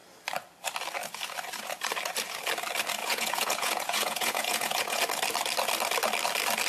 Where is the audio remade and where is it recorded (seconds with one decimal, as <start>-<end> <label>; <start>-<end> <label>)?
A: 0.0-3.0 recorded; 3.0-5.0 remade; 5.0-6.7 recorded